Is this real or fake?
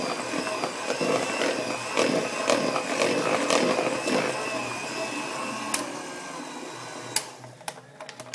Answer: real